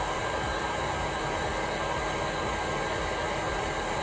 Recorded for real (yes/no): yes